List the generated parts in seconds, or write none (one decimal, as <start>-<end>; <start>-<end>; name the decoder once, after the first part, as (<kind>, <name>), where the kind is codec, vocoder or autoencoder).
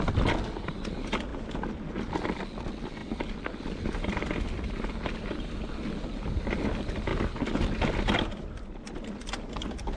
none